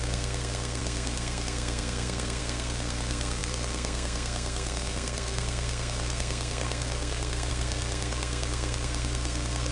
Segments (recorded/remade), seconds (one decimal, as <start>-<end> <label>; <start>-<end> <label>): 0.0-9.7 remade